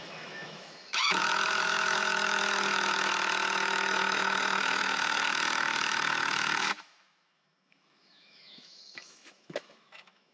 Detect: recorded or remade remade